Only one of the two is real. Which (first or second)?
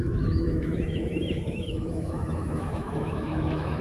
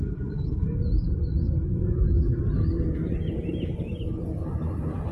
second